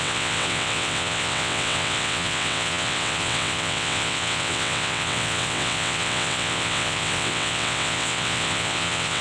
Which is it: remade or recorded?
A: remade